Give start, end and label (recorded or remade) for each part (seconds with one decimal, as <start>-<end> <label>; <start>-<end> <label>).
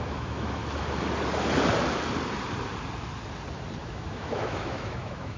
0.0-0.6 remade; 0.6-3.8 recorded; 3.8-5.4 remade